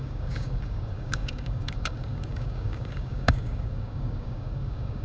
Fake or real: fake